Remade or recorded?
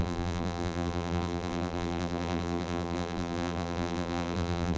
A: remade